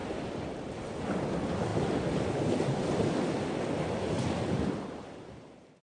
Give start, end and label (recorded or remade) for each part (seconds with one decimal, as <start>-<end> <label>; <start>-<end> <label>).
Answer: 0.0-1.0 remade; 1.0-5.9 recorded

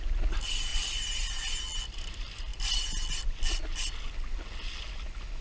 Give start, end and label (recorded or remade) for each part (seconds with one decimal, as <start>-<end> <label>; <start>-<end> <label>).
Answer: 0.0-0.7 recorded; 0.7-1.8 remade; 1.8-2.5 recorded; 2.5-3.1 remade; 3.1-5.4 recorded

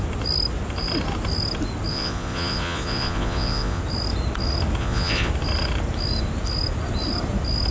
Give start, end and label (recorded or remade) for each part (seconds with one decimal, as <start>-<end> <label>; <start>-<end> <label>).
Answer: 0.0-1.9 recorded; 1.9-3.8 remade; 3.8-4.8 recorded; 4.8-5.3 remade; 5.3-7.7 recorded

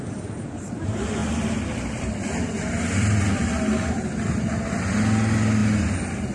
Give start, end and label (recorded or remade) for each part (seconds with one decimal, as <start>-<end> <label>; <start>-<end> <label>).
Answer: 0.0-1.2 recorded; 1.2-5.0 remade; 5.0-6.3 recorded

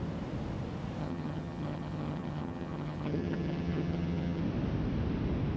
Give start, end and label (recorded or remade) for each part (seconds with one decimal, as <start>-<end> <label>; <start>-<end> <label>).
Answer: 0.0-1.0 recorded; 1.0-4.4 remade; 4.4-5.6 recorded